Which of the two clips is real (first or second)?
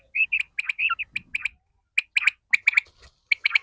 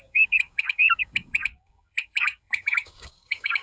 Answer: first